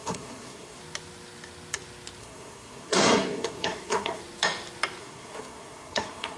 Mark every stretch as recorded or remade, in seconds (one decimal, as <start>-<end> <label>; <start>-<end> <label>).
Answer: 0.0-0.8 remade; 0.8-2.2 recorded; 2.2-4.2 remade; 4.2-5.0 recorded; 5.0-6.4 remade